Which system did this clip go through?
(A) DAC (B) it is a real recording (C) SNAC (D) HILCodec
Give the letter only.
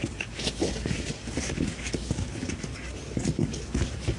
A